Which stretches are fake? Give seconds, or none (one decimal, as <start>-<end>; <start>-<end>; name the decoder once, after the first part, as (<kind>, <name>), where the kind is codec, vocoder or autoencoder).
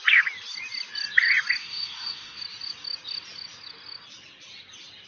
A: 1.6-2.4 (autoencoder, DAC-VAE)